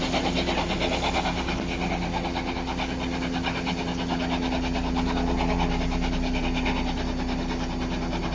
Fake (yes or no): no